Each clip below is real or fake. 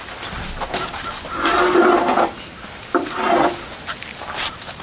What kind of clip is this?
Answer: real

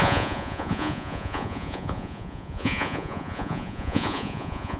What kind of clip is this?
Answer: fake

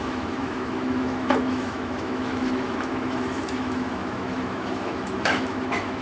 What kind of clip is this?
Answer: fake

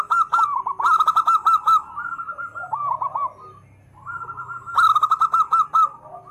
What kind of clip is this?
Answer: real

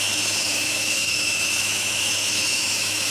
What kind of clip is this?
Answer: fake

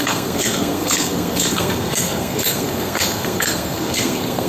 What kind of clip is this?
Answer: fake